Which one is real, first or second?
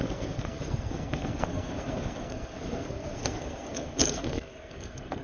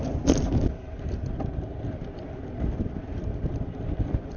second